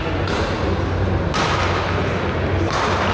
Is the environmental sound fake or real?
real